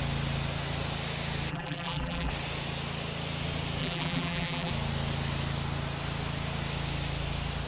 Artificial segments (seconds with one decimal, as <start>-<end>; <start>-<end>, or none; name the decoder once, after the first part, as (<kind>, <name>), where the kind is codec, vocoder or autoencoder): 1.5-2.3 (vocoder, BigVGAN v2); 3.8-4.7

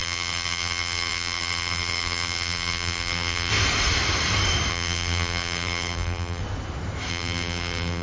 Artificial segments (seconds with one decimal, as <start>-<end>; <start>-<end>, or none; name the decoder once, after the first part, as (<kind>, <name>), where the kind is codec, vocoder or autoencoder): 0.0-3.5 (vocoder, BigVGAN v2); 4.7-6.4; 7.1-8.0

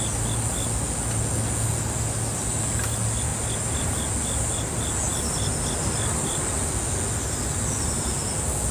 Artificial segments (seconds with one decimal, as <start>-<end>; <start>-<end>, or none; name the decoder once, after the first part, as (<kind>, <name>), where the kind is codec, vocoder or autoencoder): 3.3-3.9 (vocoder, BigVGAN v2); 5.1-6.4

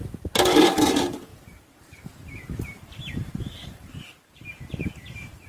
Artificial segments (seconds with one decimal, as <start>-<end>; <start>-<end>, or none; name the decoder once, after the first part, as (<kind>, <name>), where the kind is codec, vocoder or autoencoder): 0.6-5.5 (vocoder, BigVGAN v2)